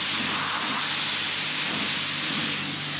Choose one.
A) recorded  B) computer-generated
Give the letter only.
A